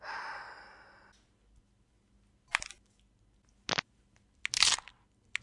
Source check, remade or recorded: recorded